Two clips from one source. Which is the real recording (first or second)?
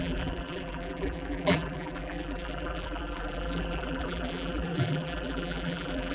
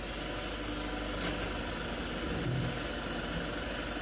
second